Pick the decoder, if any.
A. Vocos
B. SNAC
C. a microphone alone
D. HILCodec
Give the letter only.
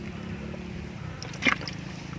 C